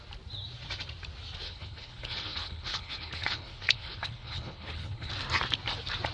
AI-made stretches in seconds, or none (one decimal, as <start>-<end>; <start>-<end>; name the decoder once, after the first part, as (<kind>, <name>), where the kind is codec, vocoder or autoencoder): 1.4-5.1 (codec, HILCodec)